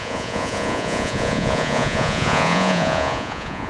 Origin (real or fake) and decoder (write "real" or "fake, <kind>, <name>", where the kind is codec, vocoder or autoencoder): fake, vocoder, Vocos